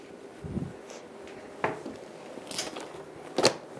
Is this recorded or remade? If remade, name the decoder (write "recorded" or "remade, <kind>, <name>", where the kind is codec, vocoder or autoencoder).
recorded